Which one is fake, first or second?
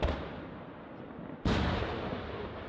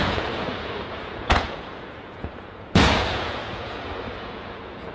second